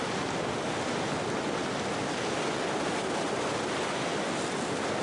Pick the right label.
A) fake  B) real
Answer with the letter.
B